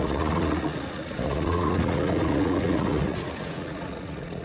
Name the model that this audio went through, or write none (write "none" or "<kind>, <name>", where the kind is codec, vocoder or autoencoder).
vocoder, Vocos